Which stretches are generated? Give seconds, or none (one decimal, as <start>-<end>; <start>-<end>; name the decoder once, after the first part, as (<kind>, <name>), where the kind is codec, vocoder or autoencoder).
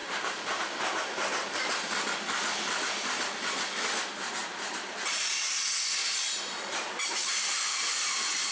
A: 0.0-0.6 (vocoder, BigVGAN v2); 4.4-5.3; 6.0-7.5